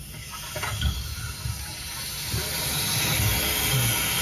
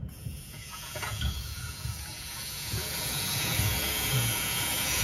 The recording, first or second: first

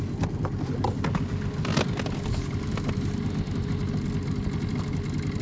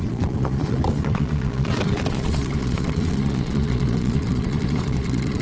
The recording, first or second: first